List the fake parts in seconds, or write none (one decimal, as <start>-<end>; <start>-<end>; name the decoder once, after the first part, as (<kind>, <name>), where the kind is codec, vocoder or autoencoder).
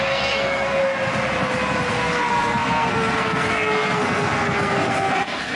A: 0.0-0.8 (codec, SNAC); 1.9-5.6